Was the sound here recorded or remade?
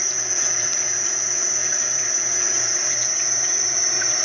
remade